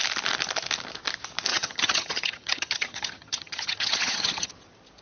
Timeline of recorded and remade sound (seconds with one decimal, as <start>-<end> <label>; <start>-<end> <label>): 0.0-1.5 recorded; 1.5-4.5 remade; 4.5-5.0 recorded